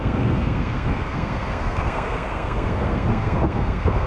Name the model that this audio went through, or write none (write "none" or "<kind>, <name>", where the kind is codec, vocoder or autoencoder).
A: codec, SNAC